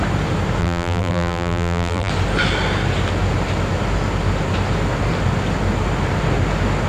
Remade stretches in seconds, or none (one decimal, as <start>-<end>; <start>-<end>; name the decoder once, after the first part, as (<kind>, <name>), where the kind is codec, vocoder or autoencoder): 0.6-2.1 (vocoder, BigVGAN v2)